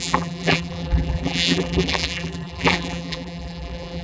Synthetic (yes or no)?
yes